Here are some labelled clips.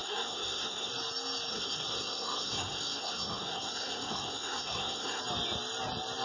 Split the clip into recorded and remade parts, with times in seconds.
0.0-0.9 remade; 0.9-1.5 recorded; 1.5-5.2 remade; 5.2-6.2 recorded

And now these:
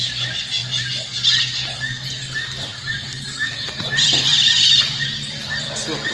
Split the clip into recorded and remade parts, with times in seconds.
0.0-2.7 recorded; 2.7-6.1 remade

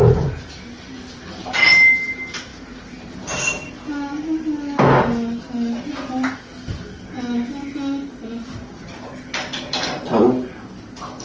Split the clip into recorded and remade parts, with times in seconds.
0.0-11.2 recorded

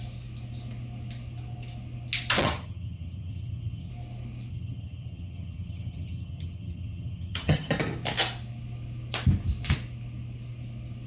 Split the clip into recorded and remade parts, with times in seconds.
0.0-2.4 recorded; 2.4-3.9 remade; 3.9-4.5 recorded; 4.5-7.7 remade; 7.7-11.1 recorded

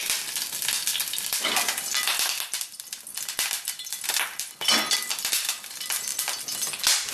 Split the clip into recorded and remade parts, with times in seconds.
0.0-7.1 recorded

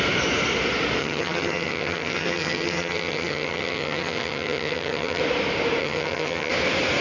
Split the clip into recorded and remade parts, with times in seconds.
0.0-1.0 recorded; 1.0-5.2 remade; 5.2-5.8 recorded; 5.8-6.5 remade; 6.5-7.0 recorded

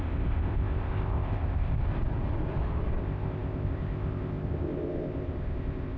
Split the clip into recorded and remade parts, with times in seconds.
0.0-1.8 remade; 1.8-3.0 recorded; 3.0-6.0 remade